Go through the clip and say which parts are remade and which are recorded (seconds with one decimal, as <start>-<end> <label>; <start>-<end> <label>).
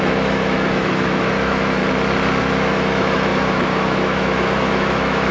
0.0-1.8 remade; 1.8-2.4 recorded; 2.4-5.3 remade